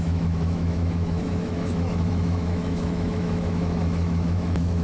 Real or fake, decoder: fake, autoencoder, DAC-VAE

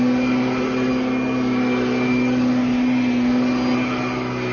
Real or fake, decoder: real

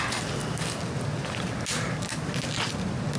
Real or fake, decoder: real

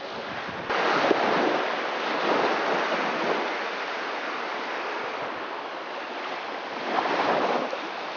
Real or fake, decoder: real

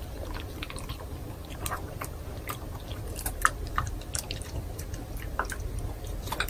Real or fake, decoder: fake, vocoder, BigVGAN v2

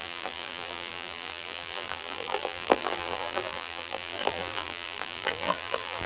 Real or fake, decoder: fake, vocoder, BigVGAN v2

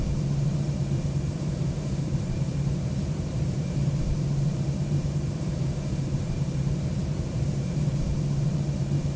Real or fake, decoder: fake, vocoder, BigVGAN v2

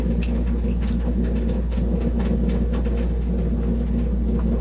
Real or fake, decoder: real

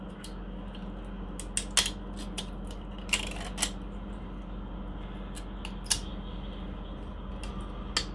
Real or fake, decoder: real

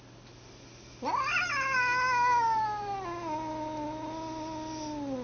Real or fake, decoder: real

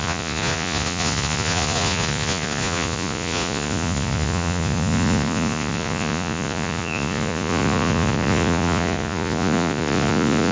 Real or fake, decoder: fake, vocoder, Vocos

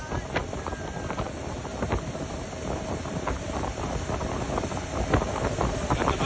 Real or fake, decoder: real